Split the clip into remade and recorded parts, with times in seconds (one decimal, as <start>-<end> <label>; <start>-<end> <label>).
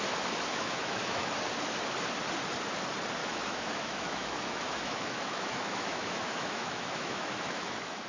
0.0-0.5 recorded; 0.5-1.3 remade; 1.3-3.2 recorded; 3.2-8.1 remade